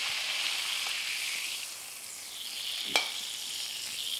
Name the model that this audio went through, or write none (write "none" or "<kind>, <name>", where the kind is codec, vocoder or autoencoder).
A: none